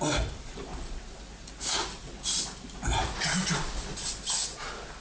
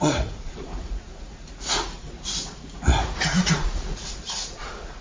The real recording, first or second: first